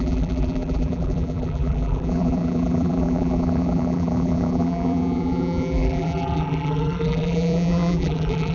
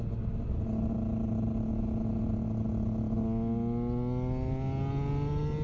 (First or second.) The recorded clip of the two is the second